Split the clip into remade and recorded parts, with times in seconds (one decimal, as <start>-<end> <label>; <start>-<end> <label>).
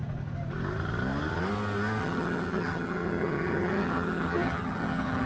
0.0-2.0 recorded; 2.0-5.3 remade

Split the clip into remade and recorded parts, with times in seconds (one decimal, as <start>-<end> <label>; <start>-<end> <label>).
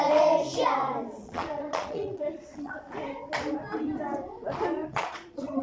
0.0-1.2 recorded; 1.2-2.8 remade; 2.8-4.8 recorded; 4.8-5.6 remade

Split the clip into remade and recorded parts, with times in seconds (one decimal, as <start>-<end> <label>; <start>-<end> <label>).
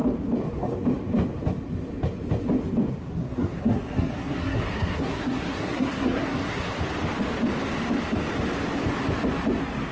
0.0-3.0 recorded; 3.0-6.8 remade; 6.8-9.9 recorded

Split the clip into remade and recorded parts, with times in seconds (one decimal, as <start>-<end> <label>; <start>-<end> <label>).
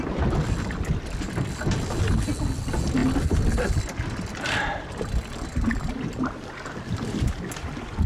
0.0-8.1 recorded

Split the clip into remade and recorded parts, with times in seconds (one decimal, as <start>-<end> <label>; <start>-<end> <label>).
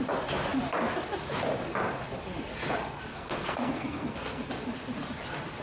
0.0-3.1 recorded; 3.1-4.5 remade; 4.5-5.6 recorded